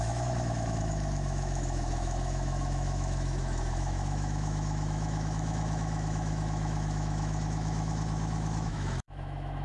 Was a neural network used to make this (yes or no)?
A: yes